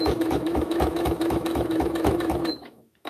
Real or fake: fake